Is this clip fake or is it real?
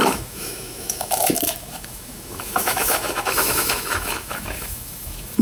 fake